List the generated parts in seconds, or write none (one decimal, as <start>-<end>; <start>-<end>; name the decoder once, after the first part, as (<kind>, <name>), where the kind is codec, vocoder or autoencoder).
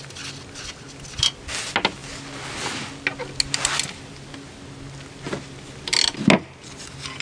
none